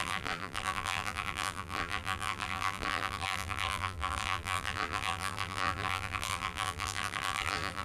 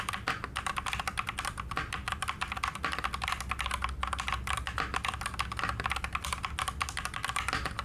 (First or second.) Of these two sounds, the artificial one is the first